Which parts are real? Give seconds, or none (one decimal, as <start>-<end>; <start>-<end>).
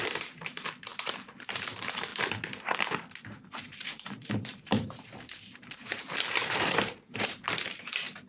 none